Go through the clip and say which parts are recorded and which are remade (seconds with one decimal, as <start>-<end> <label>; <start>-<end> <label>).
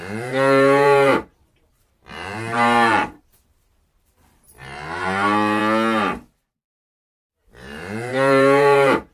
0.0-5.6 remade; 5.6-6.5 recorded; 6.5-9.1 remade